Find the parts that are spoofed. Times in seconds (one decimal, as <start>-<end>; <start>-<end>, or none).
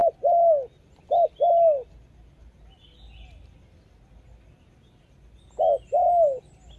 none